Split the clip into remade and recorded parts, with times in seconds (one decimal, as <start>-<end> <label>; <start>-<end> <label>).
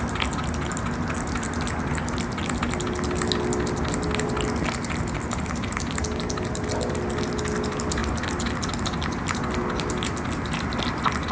0.0-11.3 recorded